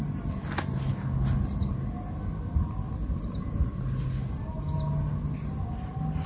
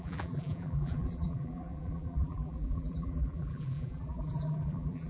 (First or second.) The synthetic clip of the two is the second